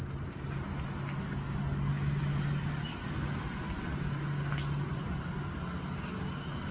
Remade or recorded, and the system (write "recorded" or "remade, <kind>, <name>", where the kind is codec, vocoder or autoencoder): recorded